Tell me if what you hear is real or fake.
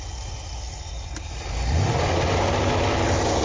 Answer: real